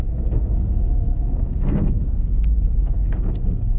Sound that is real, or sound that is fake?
fake